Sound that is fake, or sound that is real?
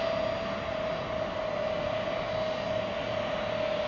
real